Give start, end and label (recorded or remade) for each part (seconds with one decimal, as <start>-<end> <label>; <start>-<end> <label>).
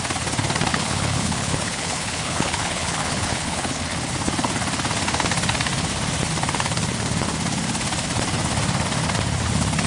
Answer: 0.0-0.7 recorded; 0.7-3.8 remade; 3.8-9.9 recorded